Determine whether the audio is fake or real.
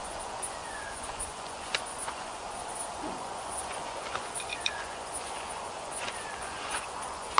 fake